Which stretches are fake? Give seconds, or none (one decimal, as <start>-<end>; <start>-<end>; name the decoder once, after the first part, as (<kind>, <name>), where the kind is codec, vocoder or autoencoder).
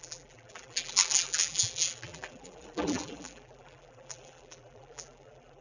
0.0-5.6 (vocoder, BigVGAN v2)